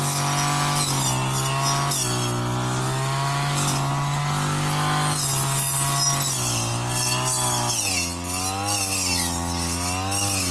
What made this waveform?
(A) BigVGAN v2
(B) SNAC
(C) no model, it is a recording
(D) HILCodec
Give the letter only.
C